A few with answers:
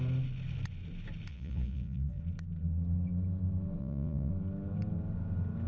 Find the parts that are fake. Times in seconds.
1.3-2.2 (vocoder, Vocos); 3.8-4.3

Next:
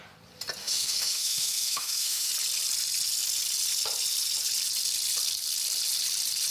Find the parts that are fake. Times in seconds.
0.6-2.3 (autoencoder, DAC-VAE)

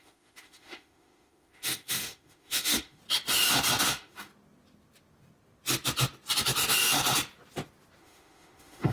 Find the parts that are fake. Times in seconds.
0.0-3.0 (autoencoder, DAC-VAE); 3.8-4.3; 8.0-8.9

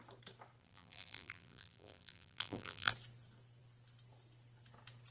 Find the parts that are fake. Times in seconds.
0.6-2.9 (vocoder, BigVGAN v2)

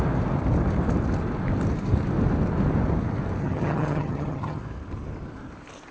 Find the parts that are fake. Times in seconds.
3.4-4.6 (vocoder, HiFi-GAN)

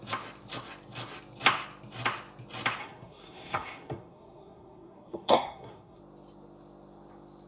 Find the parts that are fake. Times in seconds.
2.8-6.0 (codec, SNAC)

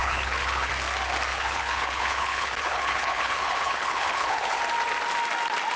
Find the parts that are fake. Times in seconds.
0.0-0.7 (codec, HILCodec); 1.3-4.6